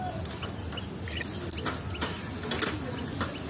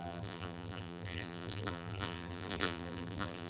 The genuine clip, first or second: first